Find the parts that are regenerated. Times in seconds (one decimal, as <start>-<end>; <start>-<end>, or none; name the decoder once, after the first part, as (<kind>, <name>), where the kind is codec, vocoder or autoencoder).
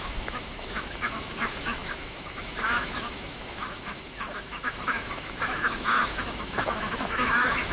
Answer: 0.0-7.7 (autoencoder, DAC-VAE)